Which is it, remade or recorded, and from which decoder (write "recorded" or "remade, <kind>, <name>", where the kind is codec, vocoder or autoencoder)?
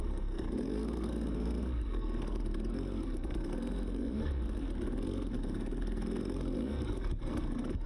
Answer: remade, codec, SNAC